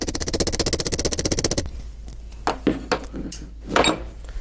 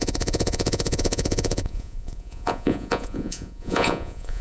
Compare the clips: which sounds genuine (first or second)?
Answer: first